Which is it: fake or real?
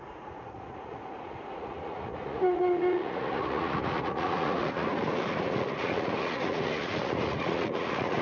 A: fake